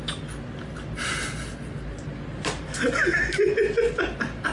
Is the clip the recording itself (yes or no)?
yes